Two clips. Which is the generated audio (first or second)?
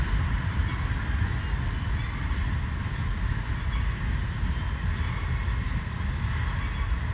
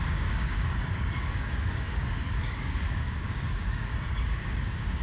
second